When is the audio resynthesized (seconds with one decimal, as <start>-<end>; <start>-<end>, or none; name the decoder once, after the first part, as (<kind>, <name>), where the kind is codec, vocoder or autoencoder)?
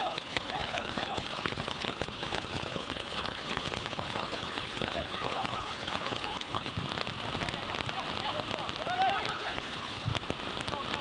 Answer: 0.0-6.7 (codec, HILCodec); 9.3-10.1